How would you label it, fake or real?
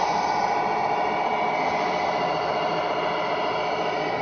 real